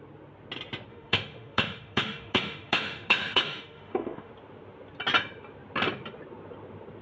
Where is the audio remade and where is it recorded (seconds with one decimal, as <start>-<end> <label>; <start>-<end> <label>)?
0.0-0.9 recorded; 0.9-4.3 remade; 4.3-7.0 recorded